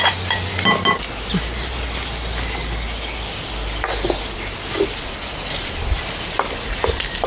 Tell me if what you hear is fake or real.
real